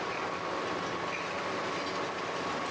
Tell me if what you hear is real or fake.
real